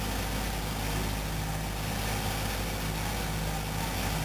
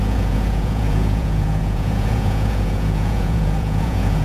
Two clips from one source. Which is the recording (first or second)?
first